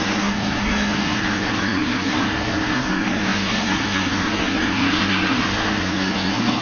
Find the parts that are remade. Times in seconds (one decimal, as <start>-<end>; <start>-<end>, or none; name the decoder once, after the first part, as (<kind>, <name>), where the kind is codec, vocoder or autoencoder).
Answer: 0.0-6.6 (codec, SNAC)

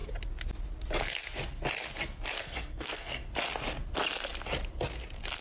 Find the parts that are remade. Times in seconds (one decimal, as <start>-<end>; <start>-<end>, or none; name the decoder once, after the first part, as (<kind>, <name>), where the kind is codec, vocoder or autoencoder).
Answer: 2.4-3.3 (codec, SNAC)

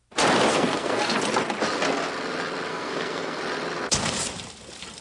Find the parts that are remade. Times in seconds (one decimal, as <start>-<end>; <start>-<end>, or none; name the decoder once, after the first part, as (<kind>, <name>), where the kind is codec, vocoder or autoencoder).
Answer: 0.5-1.2 (codec, SNAC); 2.7-3.4

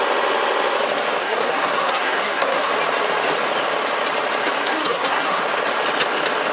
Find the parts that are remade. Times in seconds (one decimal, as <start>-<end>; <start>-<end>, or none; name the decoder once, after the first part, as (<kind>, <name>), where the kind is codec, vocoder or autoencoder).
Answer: 1.2-2.7 (codec, SNAC); 4.6-5.4

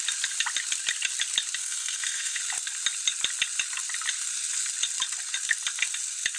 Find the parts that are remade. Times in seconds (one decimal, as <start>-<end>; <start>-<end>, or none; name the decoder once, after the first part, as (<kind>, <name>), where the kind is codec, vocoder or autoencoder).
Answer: 1.6-2.4 (codec, SNAC)